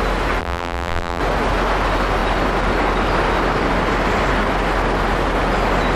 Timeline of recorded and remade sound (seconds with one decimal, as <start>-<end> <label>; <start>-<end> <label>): 0.0-0.4 recorded; 0.4-1.2 remade; 1.2-6.0 recorded